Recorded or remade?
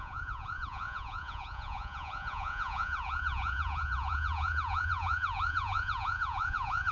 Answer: remade